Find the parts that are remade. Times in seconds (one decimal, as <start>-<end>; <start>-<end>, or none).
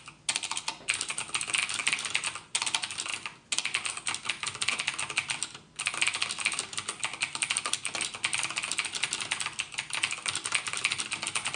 none